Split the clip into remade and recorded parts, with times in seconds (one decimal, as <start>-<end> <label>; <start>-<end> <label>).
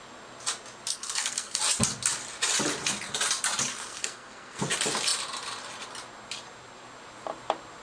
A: 0.0-0.9 recorded; 0.9-1.6 remade; 1.6-3.7 recorded; 3.7-4.6 remade; 4.6-7.8 recorded